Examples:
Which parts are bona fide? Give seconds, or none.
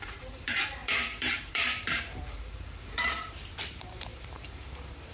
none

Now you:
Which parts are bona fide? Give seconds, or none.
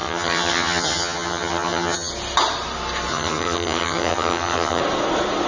2.1-3.1; 4.8-5.5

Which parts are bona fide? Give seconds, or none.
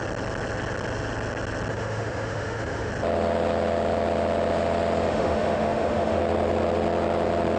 0.0-1.7; 2.9-5.1; 6.2-7.6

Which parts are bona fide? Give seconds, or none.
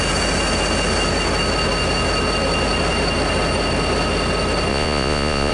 0.0-4.7